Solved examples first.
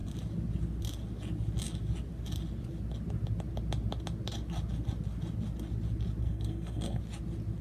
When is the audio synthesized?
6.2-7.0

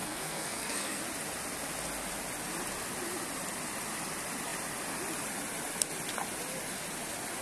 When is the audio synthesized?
0.0-1.0

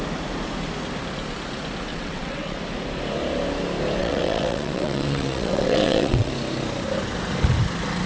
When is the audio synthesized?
1.9-2.6; 4.0-6.3